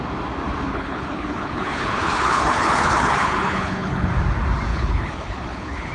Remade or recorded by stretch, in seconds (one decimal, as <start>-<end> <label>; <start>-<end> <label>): 0.0-0.7 recorded; 0.7-4.1 remade; 4.1-4.7 recorded; 4.7-5.9 remade